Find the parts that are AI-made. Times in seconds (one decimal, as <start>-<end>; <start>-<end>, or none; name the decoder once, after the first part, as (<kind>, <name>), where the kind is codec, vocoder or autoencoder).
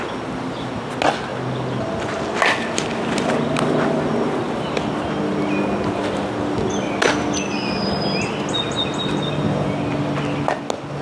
none